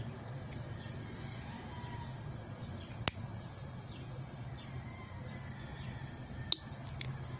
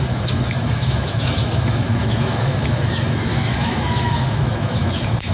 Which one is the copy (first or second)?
second